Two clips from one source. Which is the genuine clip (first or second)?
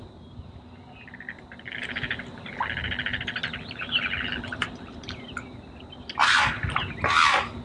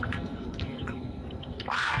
first